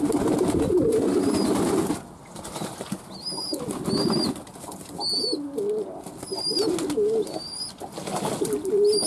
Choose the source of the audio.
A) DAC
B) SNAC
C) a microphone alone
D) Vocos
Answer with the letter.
C